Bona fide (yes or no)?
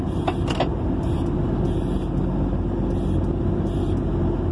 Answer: yes